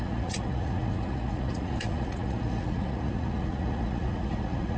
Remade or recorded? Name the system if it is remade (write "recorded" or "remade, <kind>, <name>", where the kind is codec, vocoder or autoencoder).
remade, vocoder, Vocos